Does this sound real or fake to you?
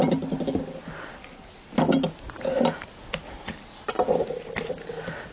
real